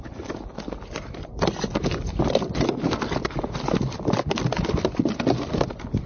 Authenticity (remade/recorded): recorded